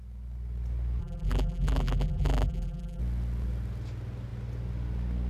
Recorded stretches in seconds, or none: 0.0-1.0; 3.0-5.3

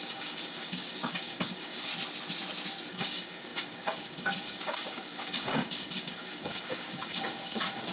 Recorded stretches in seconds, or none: 1.9-2.9

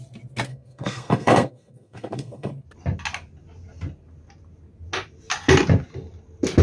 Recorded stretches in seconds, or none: 0.0-0.5; 2.5-6.6

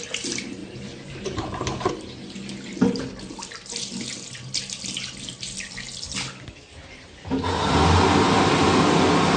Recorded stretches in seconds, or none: 0.0-0.6; 1.9-9.4